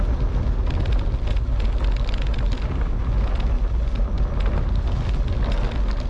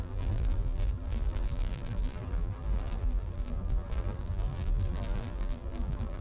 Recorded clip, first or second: first